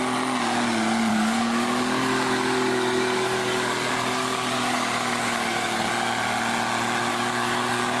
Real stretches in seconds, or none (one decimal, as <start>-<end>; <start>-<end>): 0.0-1.1; 5.9-7.1